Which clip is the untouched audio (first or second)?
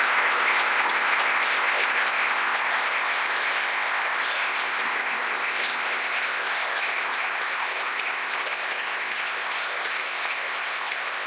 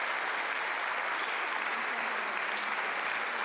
second